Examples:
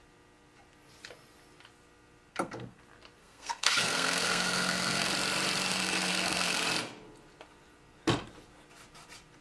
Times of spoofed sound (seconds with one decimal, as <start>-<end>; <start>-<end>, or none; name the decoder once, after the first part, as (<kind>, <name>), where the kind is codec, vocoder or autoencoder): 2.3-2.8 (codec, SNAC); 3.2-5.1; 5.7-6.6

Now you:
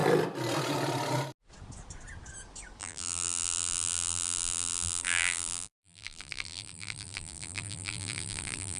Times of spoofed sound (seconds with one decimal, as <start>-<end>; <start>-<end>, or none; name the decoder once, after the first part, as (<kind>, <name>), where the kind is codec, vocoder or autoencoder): 2.8-8.8 (vocoder, BigVGAN v2)

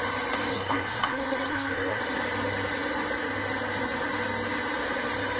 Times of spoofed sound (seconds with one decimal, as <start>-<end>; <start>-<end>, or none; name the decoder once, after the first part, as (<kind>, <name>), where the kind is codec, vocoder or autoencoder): 0.5-2.0 (codec, SNAC)